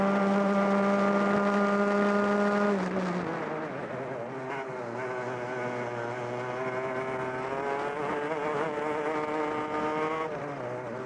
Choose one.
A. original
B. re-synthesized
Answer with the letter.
A